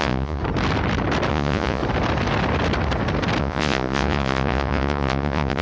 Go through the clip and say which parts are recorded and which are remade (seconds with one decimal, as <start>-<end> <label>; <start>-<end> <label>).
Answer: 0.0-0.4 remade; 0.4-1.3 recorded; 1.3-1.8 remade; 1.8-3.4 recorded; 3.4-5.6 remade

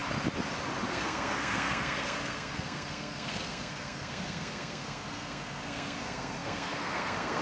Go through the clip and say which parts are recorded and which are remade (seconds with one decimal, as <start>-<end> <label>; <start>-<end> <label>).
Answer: 0.0-0.9 recorded; 0.9-7.4 remade

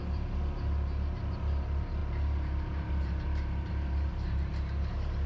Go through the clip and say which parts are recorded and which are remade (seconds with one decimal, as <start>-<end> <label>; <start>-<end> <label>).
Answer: 0.0-5.3 recorded